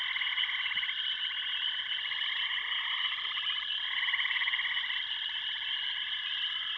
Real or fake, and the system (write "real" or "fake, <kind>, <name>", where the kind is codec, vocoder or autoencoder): real